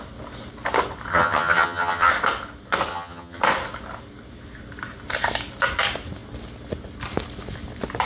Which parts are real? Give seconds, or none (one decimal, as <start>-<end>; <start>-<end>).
0.0-1.1; 2.1-2.9; 3.4-8.1